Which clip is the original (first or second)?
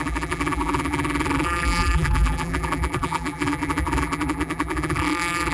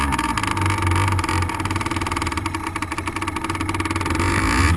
second